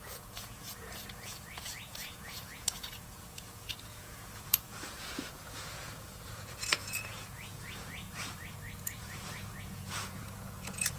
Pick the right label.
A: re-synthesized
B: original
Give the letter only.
A